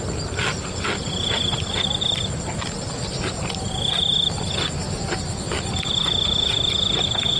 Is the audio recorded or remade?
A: recorded